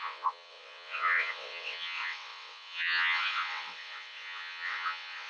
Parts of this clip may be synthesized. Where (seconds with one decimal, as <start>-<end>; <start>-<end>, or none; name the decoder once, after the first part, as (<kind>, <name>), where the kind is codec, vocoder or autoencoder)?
0.0-5.3 (vocoder, WaveNeXt)